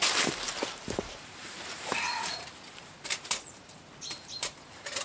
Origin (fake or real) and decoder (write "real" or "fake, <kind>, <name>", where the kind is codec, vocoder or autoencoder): fake, vocoder, BigVGAN v2